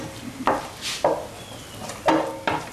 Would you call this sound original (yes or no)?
yes